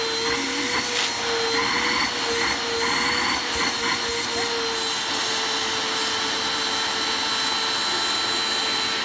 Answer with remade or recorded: recorded